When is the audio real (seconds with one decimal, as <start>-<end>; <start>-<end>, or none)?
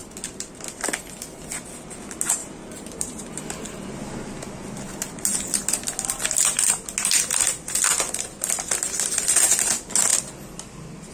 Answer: 0.0-2.4; 3.4-11.1